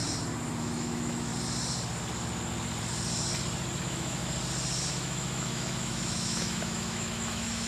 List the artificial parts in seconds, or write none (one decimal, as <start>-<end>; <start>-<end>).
0.6-1.3; 3.8-4.2; 4.9-7.7